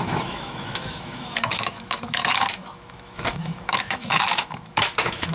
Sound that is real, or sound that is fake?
fake